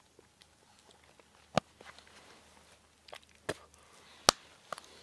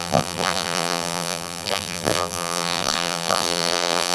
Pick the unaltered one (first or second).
first